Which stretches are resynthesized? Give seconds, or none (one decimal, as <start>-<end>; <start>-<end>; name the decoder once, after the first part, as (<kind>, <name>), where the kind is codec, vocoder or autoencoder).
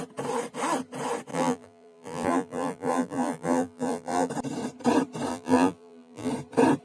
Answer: 1.3-4.3 (vocoder, BigVGAN v2); 5.3-6.3